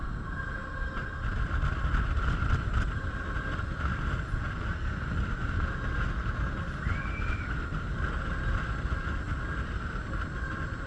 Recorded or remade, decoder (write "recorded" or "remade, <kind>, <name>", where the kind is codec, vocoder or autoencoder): recorded